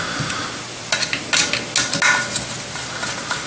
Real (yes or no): yes